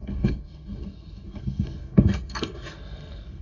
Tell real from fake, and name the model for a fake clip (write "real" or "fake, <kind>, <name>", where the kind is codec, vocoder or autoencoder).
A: fake, codec, SNAC